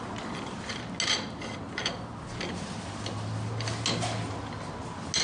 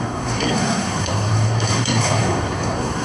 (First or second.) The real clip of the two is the first